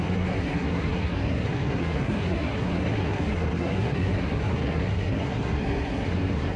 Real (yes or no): no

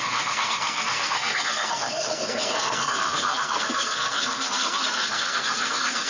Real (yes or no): no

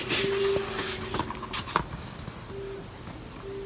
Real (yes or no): yes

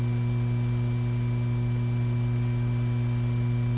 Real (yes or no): yes